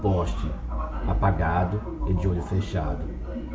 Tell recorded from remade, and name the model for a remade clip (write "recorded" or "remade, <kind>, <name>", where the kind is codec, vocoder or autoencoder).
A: recorded